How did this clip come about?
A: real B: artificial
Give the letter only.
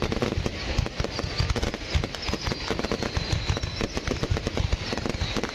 A